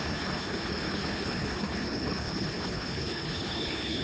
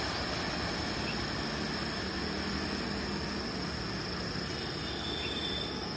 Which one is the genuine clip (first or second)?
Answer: second